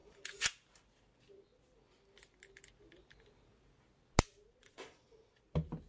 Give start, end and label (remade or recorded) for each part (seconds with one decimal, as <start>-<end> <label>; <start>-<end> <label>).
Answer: 0.0-4.6 recorded; 4.6-5.1 remade; 5.1-5.9 recorded